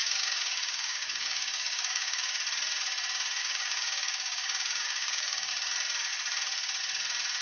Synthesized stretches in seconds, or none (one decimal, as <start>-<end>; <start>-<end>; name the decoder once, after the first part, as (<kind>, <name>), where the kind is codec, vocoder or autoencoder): 0.0-2.4 (codec, DAC); 3.4-5.5

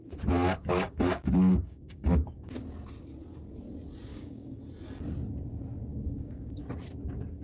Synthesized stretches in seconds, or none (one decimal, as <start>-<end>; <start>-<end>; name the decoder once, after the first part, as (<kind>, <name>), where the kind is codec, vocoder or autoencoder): 0.6-2.5 (codec, DAC); 4.1-4.6; 5.9-6.6

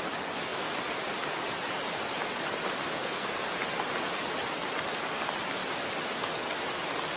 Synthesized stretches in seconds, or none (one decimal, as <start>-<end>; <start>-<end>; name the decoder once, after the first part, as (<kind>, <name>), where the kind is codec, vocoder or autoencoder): 3.0-3.5 (codec, SNAC)

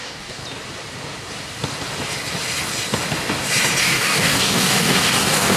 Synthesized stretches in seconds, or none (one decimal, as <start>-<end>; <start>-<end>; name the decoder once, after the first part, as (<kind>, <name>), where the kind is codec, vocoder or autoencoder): 0.0-0.4 (codec, DAC); 3.8-5.6

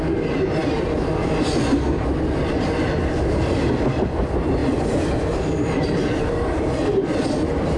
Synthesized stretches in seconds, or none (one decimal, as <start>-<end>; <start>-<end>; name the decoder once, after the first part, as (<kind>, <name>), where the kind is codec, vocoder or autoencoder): none

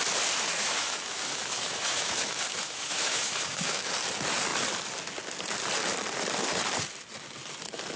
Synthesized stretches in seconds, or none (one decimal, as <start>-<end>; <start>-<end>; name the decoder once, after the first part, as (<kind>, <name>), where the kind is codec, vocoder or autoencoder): 0.6-3.9 (autoencoder, DAC-VAE)

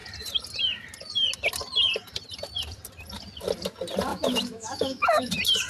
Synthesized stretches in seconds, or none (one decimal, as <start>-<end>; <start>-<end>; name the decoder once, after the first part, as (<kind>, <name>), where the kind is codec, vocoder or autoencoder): 4.1-5.3 (autoencoder, DAC-VAE)